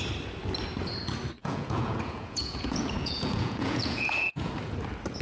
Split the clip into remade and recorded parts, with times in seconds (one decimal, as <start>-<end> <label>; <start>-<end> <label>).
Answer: 0.0-1.4 recorded; 1.4-4.5 remade; 4.5-5.2 recorded